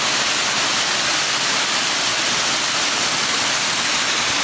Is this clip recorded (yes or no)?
yes